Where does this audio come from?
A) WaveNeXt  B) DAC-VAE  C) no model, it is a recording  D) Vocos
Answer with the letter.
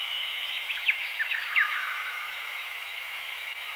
B